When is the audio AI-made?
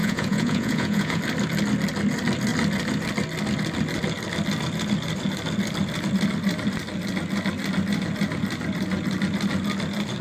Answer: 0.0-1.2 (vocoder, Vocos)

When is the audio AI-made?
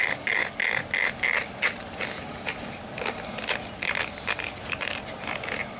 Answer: none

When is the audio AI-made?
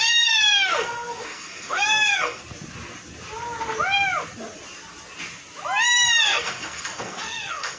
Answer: 0.0-2.4 (codec, SNAC); 6.2-7.8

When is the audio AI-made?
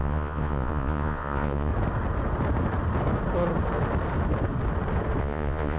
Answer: 0.0-1.7 (vocoder, Vocos); 5.2-5.8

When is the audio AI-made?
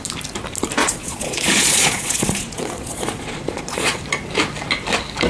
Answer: 0.8-4.0 (vocoder, Vocos)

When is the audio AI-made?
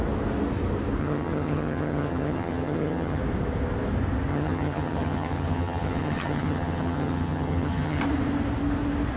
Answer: 1.0-3.2 (vocoder, HiFi-GAN); 4.3-8.0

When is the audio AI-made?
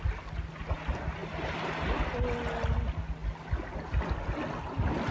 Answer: none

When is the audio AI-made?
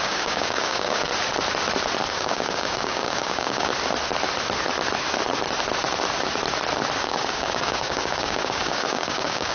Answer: 0.0-1.1 (codec, DAC); 2.1-3.7; 7.0-9.5